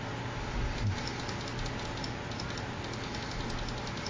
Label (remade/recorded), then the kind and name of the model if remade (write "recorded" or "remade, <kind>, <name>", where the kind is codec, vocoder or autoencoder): recorded